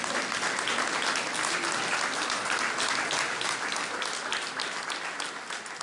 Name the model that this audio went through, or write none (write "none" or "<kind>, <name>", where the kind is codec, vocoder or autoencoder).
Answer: none